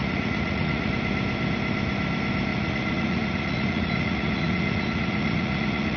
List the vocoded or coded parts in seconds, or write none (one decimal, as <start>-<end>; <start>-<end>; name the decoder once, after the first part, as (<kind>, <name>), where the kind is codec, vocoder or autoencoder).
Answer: 0.0-0.9 (vocoder, Vocos); 2.5-6.0